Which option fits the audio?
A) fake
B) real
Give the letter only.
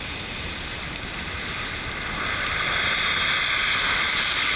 B